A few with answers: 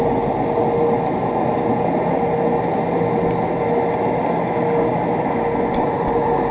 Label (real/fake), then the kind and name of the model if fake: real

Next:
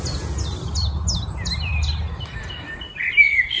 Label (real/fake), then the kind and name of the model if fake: real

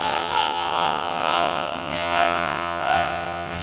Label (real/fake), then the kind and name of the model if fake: fake, vocoder, WaveNeXt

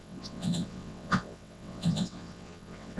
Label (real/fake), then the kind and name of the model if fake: fake, vocoder, WaveNeXt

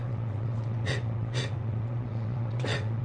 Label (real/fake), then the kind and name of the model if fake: fake, vocoder, WaveNeXt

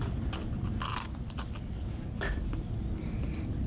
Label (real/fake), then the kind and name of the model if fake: real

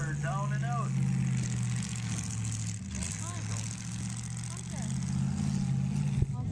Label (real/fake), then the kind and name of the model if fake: real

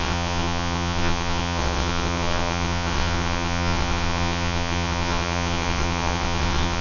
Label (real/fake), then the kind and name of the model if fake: fake, vocoder, WaveNeXt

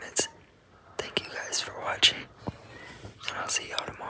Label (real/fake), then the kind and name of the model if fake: real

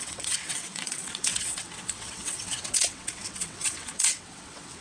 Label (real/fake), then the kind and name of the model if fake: fake, vocoder, WaveNeXt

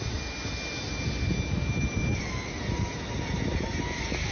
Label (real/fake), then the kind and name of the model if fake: real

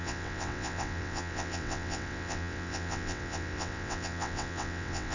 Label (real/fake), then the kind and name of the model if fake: fake, vocoder, WaveNeXt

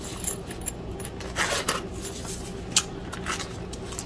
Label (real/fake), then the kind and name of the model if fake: real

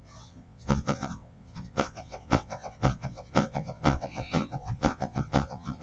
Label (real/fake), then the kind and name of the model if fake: fake, vocoder, WaveNeXt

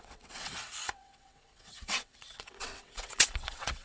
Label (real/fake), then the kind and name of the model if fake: fake, vocoder, WaveNeXt